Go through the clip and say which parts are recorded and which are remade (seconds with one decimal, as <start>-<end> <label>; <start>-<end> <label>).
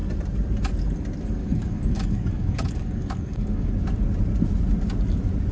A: 0.0-1.4 recorded; 1.4-3.7 remade; 3.7-5.5 recorded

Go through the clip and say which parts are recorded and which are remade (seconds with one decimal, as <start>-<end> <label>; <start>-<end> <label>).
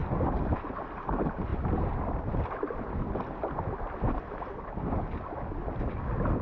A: 0.0-6.4 recorded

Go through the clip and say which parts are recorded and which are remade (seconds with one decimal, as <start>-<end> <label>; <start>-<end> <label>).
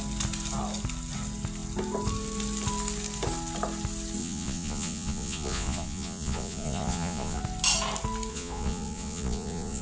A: 0.0-4.2 recorded; 4.2-7.4 remade; 7.4-8.3 recorded; 8.3-9.8 remade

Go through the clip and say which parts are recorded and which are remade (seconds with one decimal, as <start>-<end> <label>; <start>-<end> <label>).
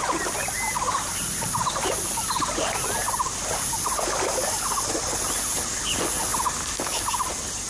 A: 0.0-7.7 recorded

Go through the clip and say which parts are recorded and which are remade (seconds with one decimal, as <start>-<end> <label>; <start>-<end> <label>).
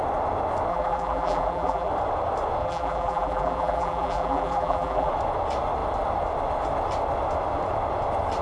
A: 0.0-0.7 recorded; 0.7-1.9 remade; 1.9-2.6 recorded; 2.6-5.1 remade; 5.1-8.4 recorded